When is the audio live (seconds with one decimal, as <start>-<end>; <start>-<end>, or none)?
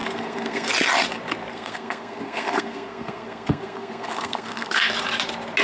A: 0.7-1.5; 4.9-5.6